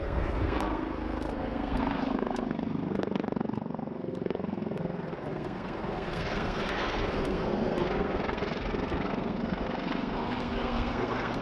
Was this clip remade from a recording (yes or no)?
yes